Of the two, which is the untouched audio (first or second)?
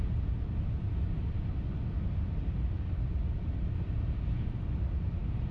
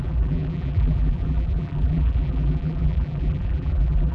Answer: first